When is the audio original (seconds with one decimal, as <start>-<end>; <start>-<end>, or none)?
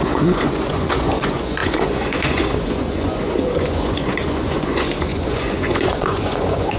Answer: none